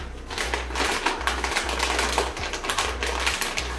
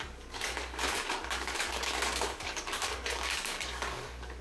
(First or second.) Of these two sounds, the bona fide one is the first